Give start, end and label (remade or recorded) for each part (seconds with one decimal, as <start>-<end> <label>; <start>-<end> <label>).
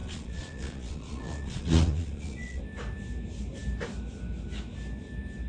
0.0-2.6 remade; 2.6-5.5 recorded